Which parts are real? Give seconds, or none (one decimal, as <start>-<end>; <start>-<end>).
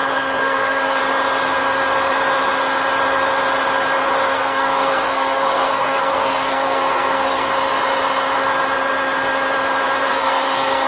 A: 1.0-4.2; 7.5-10.1